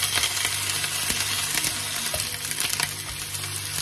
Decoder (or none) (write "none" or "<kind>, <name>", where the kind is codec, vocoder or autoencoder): none